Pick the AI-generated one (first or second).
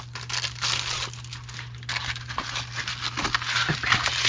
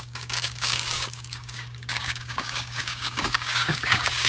second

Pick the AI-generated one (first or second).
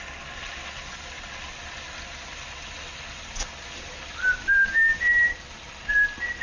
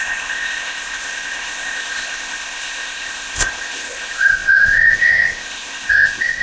second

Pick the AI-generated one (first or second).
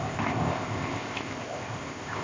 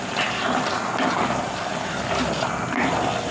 first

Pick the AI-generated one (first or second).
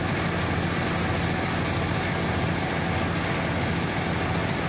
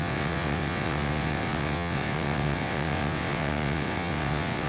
second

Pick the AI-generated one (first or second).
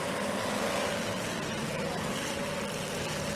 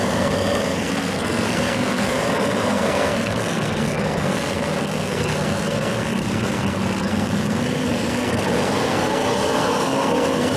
second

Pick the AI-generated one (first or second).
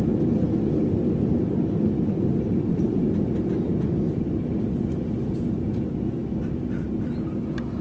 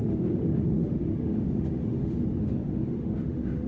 second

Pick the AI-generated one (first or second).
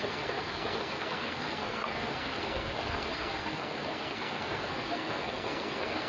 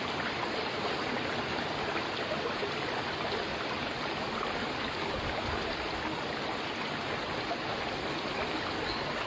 first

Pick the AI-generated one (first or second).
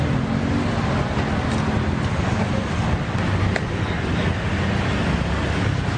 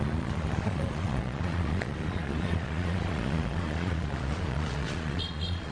second